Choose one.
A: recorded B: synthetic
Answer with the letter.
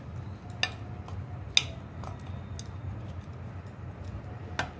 A